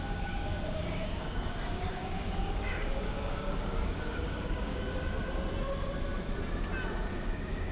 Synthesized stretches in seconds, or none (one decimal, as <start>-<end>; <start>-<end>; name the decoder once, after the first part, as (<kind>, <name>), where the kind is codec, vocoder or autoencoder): 0.0-4.9 (codec, DAC); 7.2-7.7